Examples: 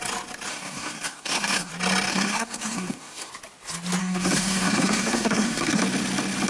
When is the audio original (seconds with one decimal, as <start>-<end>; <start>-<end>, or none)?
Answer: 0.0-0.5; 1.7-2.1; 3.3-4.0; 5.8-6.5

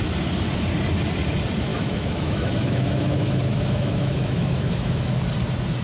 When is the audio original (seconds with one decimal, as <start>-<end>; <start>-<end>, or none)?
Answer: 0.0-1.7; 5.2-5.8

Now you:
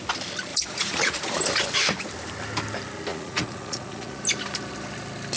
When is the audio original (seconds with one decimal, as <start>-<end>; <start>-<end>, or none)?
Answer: 0.0-0.5; 1.4-3.1; 4.2-5.4

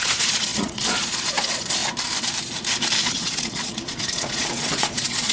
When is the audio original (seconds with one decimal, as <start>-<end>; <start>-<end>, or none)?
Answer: 1.8-3.0

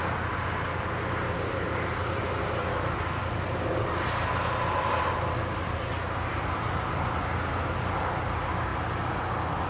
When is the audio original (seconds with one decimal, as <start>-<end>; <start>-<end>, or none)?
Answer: 0.0-2.7; 3.2-9.7